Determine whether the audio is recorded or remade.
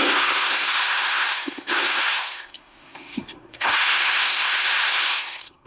remade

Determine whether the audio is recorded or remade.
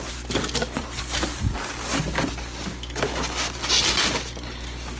recorded